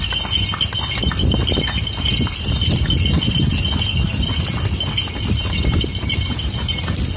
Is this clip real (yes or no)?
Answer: yes